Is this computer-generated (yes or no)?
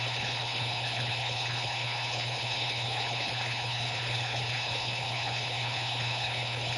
yes